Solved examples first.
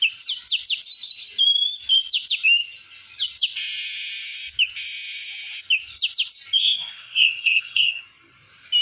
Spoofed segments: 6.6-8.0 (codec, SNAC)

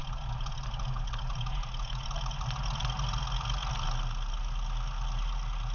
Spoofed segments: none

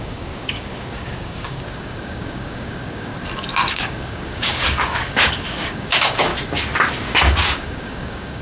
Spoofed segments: 0.0-3.1 (codec, DAC); 3.7-6.3; 6.9-8.4